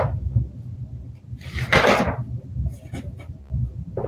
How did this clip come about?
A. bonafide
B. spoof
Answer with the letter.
A